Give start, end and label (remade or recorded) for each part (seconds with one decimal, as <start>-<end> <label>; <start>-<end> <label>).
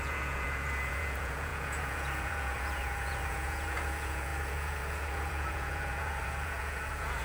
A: 0.0-7.2 remade